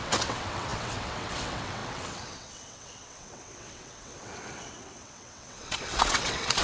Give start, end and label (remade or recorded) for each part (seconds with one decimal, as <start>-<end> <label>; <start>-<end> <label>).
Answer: 0.0-6.6 remade